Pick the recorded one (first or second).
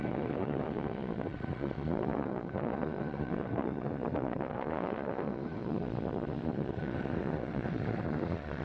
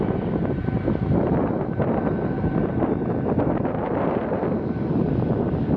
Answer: second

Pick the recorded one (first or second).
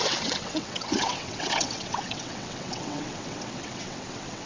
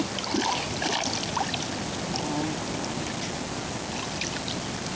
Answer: second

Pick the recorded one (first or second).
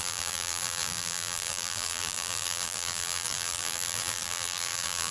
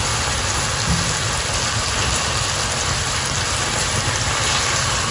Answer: second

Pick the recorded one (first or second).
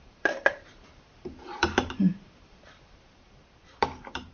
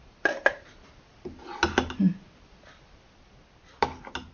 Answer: second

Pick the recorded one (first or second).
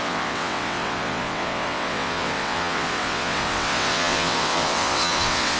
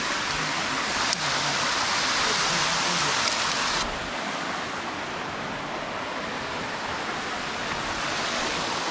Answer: second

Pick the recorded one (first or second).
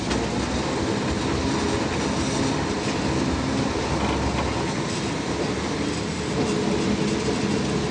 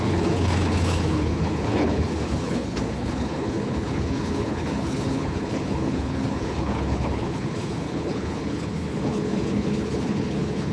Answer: first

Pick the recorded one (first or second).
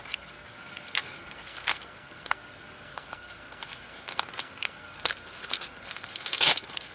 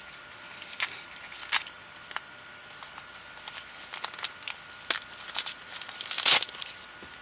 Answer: second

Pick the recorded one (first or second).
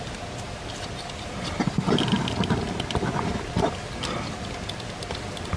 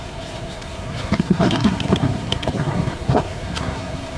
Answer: first